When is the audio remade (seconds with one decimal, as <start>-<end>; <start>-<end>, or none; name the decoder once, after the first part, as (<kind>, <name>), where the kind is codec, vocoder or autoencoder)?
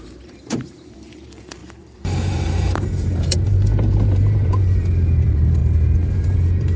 0.0-5.6 (vocoder, BigVGAN v2); 6.1-6.8